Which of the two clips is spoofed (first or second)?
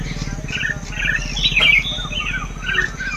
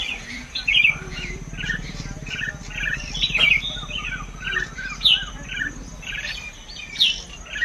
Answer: second